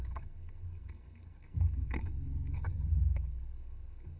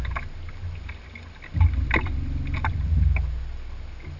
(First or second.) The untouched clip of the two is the second